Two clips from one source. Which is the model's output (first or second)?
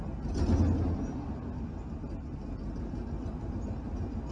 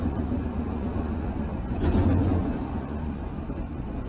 second